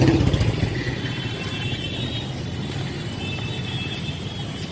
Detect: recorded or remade recorded